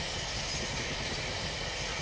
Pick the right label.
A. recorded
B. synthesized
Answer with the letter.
A